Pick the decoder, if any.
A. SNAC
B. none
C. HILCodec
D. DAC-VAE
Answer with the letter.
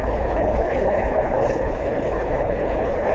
C